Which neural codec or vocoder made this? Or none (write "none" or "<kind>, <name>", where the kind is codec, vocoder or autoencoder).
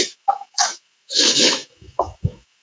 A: autoencoder, DAC-VAE